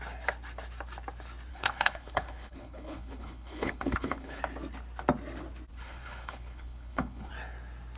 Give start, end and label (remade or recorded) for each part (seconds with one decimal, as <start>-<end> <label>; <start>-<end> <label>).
0.0-1.5 recorded; 1.5-4.4 remade; 4.4-5.7 recorded; 5.7-7.3 remade; 7.3-8.0 recorded